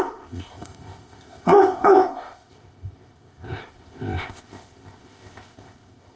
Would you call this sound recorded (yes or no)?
no